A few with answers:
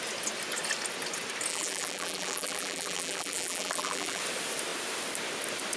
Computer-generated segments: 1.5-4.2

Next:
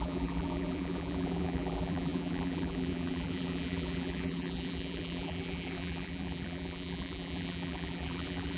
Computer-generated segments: 0.0-8.6